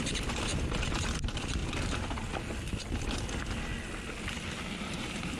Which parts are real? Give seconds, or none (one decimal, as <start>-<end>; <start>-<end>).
0.5-1.2; 1.6-4.8